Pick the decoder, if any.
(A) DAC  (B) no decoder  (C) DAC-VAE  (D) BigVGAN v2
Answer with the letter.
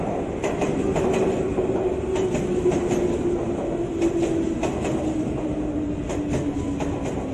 B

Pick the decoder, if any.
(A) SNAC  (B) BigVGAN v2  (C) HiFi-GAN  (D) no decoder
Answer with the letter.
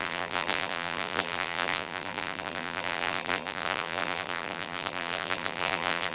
B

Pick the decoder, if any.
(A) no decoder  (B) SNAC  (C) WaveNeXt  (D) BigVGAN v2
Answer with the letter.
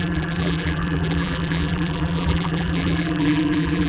D